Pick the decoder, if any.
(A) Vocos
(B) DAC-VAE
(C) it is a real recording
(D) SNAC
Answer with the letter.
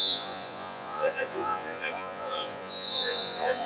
A